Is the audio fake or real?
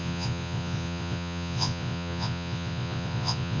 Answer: fake